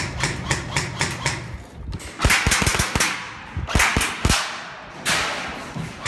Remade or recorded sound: recorded